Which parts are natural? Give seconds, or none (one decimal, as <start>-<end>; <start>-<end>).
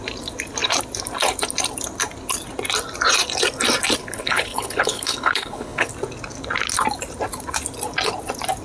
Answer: 0.0-4.0; 5.9-8.6